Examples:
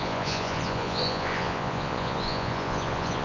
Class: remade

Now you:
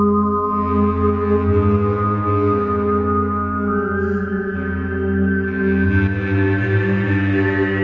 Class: recorded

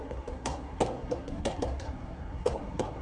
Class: remade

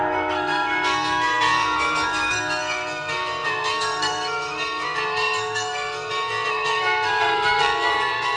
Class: remade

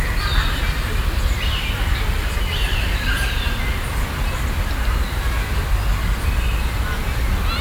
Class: recorded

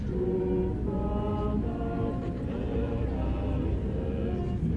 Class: recorded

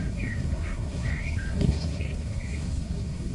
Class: remade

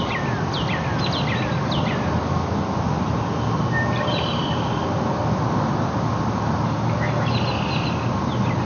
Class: recorded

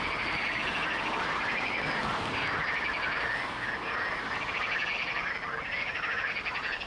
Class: recorded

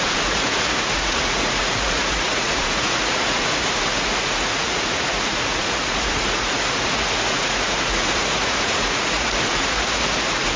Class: remade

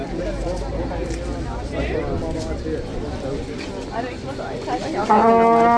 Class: recorded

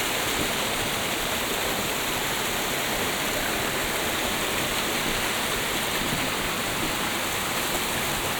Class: recorded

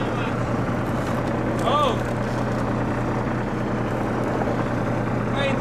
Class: recorded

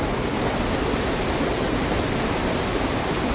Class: recorded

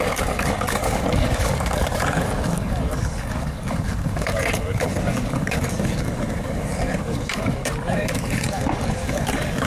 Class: remade